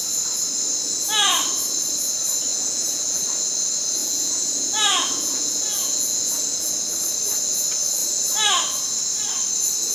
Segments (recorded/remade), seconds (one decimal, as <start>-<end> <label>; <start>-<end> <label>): 0.0-2.5 recorded; 2.5-3.2 remade; 3.2-4.0 recorded; 4.0-6.7 remade; 6.7-9.9 recorded